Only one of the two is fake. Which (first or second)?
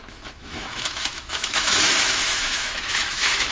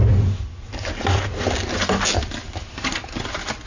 first